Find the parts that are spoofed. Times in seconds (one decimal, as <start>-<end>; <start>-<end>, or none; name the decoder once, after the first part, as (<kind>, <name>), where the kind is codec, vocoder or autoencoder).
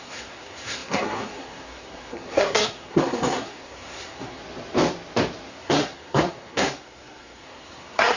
0.0-4.4 (codec, SNAC); 5.5-8.2